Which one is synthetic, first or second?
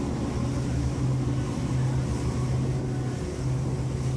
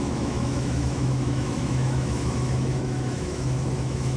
second